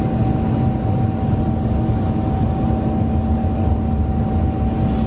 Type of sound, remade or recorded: recorded